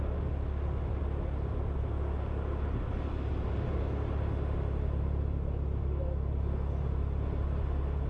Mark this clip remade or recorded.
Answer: recorded